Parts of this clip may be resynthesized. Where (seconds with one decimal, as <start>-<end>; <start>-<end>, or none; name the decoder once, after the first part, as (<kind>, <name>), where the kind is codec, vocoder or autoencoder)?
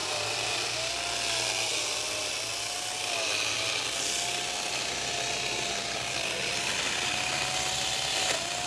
none